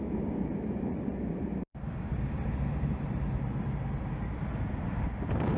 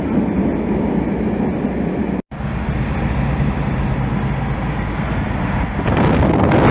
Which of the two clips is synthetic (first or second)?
first